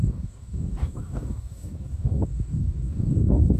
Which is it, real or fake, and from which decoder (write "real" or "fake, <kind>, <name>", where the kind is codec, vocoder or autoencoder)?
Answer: fake, codec, DAC